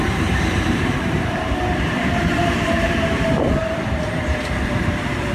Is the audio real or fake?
fake